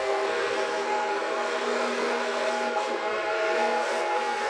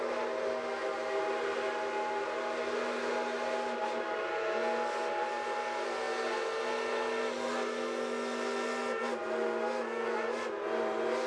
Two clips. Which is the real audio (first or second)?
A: second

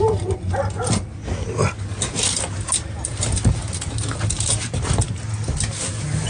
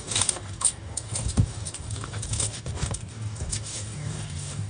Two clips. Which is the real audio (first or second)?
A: first